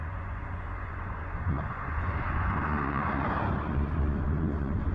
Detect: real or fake fake